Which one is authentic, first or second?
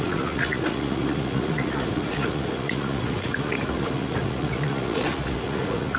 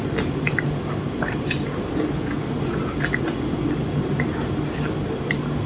second